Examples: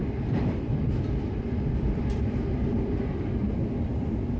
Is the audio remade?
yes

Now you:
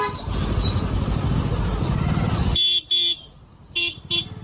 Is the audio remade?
no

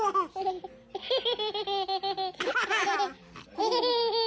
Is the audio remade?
no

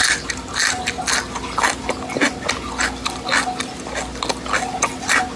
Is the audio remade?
no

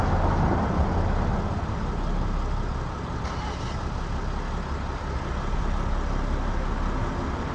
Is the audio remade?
no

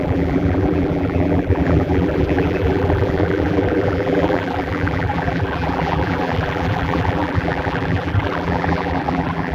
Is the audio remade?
yes